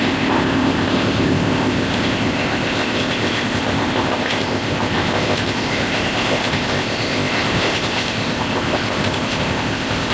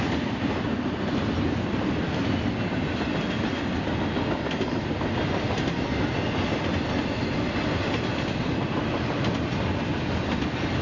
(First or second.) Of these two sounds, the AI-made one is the first